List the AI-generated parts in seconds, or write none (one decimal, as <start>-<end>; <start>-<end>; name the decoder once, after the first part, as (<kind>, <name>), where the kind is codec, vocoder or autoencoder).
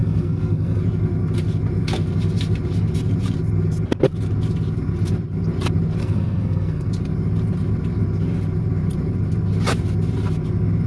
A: 0.0-0.8 (codec, SNAC); 6.0-6.9